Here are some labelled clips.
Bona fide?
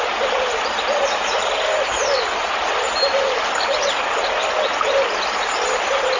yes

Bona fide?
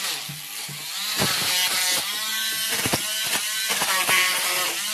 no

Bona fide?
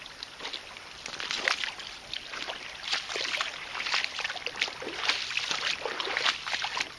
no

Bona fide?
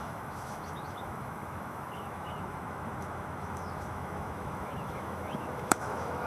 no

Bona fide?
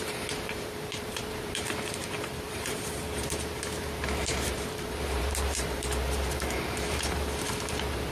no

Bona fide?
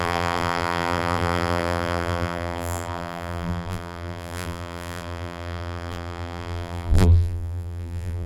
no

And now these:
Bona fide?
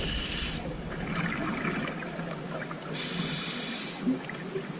yes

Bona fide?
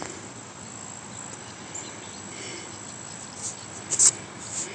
yes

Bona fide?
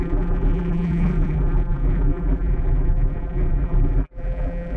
no